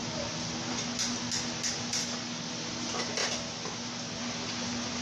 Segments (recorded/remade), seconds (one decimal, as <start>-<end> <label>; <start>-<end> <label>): 0.0-2.0 recorded; 2.0-2.5 remade; 2.5-5.0 recorded